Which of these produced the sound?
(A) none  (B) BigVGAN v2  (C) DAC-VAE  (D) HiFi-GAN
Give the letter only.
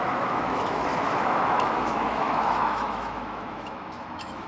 C